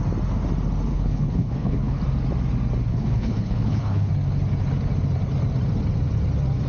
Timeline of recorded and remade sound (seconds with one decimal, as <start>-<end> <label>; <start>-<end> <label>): 0.0-0.9 recorded; 0.9-2.0 remade; 2.0-2.9 recorded; 2.9-4.1 remade; 4.1-6.7 recorded